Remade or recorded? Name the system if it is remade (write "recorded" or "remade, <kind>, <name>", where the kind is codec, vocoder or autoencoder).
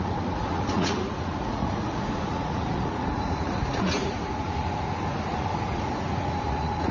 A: remade, vocoder, Vocos